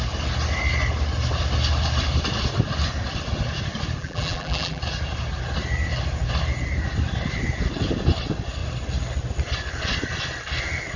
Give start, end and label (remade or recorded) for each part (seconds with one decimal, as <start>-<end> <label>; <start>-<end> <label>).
0.0-4.0 recorded; 4.0-4.8 remade; 4.8-11.0 recorded